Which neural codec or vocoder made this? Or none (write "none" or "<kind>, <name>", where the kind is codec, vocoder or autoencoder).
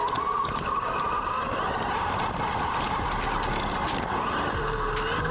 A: none